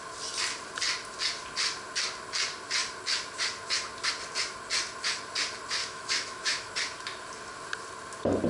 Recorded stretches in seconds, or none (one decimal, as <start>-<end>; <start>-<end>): 0.0-5.8; 6.7-8.5